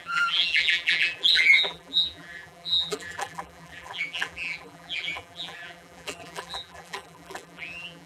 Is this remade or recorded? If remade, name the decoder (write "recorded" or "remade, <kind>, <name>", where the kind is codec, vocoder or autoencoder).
remade, vocoder, BigVGAN v2